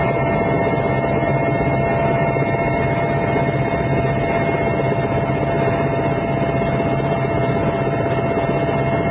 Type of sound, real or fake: real